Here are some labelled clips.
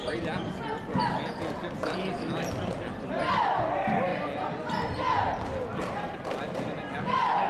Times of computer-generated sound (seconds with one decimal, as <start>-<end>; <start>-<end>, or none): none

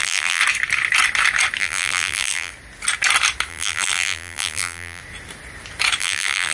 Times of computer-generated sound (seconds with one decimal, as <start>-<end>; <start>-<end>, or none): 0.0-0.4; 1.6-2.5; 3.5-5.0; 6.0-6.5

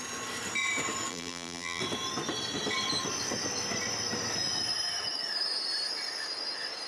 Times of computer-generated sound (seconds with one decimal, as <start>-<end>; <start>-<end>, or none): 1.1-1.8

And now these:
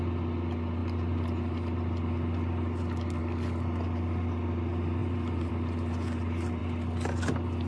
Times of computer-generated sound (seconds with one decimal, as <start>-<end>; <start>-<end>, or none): 5.0-5.5